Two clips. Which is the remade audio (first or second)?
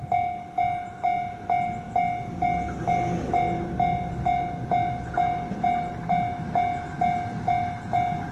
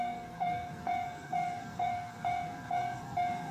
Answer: second